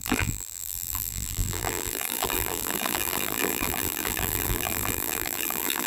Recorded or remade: remade